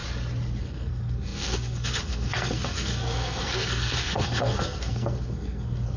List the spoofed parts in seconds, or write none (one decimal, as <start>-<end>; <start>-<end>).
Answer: 0.6-6.0